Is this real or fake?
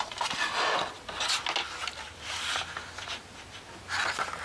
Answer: real